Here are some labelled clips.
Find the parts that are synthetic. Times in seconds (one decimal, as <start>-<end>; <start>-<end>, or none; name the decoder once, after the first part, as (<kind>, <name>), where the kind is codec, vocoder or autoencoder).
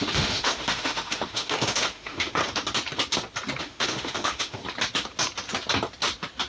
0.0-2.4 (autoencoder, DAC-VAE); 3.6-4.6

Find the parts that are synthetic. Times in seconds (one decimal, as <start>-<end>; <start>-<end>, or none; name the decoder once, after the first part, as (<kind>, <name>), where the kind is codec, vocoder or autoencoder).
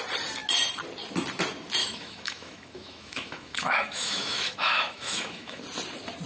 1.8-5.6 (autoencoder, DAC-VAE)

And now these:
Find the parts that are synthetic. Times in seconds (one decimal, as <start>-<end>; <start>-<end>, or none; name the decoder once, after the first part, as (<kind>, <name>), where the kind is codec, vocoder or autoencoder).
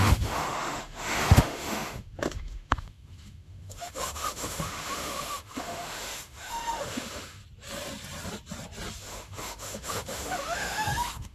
0.0-7.4 (autoencoder, DAC-VAE); 9.0-11.3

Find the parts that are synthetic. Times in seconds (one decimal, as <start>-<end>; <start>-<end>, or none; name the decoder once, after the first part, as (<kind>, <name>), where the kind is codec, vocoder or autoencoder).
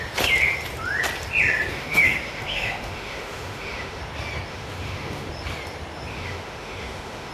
1.7-4.0 (autoencoder, DAC-VAE); 4.5-5.3; 6.1-7.3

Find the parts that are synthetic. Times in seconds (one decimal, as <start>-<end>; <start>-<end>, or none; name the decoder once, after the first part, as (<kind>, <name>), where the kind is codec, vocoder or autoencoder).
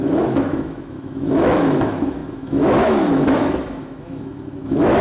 0.0-5.0 (autoencoder, DAC-VAE)